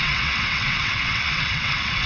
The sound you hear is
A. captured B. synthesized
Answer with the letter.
B